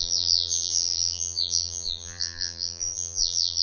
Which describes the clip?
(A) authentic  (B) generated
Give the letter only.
B